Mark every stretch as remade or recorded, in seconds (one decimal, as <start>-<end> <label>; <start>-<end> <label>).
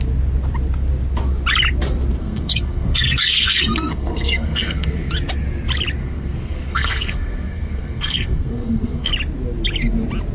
0.0-2.2 recorded; 2.2-5.1 remade; 5.1-6.0 recorded; 6.0-9.1 remade; 9.1-10.3 recorded